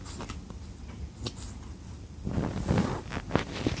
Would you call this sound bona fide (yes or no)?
yes